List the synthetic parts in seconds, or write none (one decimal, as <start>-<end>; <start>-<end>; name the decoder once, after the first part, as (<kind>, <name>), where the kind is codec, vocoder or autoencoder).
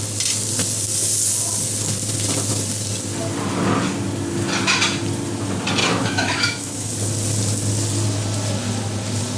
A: 5.8-6.9 (autoencoder, DAC-VAE)